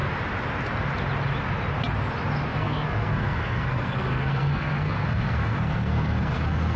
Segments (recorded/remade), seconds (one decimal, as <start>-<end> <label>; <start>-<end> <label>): 0.0-2.5 recorded; 2.5-6.8 remade

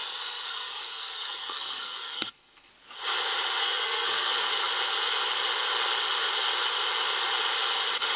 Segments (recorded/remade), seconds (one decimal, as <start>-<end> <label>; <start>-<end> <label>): 0.0-2.7 remade; 2.7-3.6 recorded; 3.6-4.3 remade; 4.3-8.2 recorded

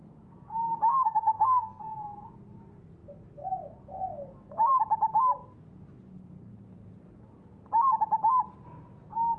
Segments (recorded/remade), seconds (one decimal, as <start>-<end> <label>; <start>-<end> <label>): 0.0-0.9 recorded; 0.9-1.8 remade; 1.8-9.4 recorded

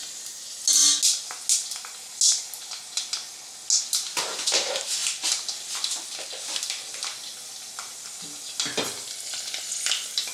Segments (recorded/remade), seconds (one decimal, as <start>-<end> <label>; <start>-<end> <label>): 0.0-10.3 recorded